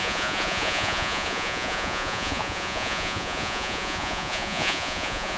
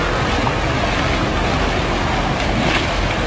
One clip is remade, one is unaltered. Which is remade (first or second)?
first